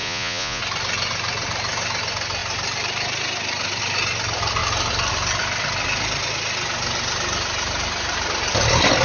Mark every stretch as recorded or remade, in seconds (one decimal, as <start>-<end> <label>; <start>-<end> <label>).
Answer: 0.0-0.6 remade; 0.6-9.0 recorded